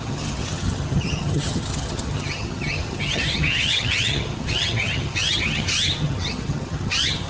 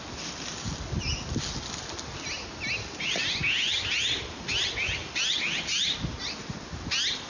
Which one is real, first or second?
second